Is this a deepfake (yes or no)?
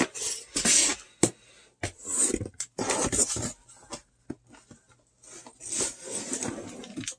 no